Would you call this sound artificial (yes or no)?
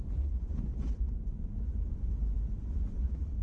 yes